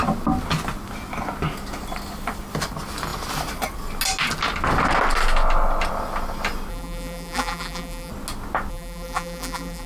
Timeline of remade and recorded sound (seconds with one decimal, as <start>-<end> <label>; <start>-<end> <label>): 0.0-6.7 recorded; 6.7-8.1 remade; 8.1-8.7 recorded; 8.7-9.9 remade